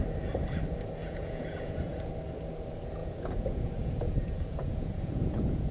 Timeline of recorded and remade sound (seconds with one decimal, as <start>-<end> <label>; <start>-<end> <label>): 0.0-1.0 recorded; 1.0-2.1 remade; 2.1-3.0 recorded; 3.0-5.7 remade